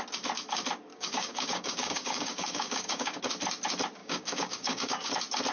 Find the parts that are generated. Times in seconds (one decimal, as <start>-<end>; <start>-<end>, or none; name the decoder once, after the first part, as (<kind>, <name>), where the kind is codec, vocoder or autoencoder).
0.9-3.2 (codec, DAC); 4.0-5.1